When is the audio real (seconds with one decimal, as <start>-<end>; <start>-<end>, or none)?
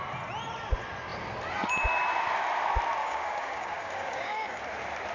0.0-3.0; 4.6-5.1